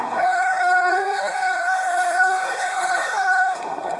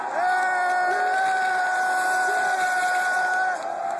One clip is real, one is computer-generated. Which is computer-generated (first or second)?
first